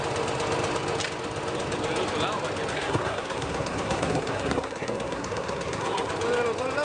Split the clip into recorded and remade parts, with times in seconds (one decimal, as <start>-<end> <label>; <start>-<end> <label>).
0.0-2.7 recorded; 2.7-6.1 remade; 6.1-6.8 recorded